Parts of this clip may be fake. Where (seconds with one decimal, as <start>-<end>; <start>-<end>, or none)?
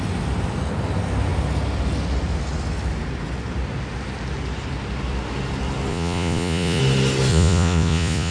5.9-6.8; 7.3-8.3